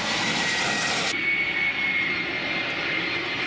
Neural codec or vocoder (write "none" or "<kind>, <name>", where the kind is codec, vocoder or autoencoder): none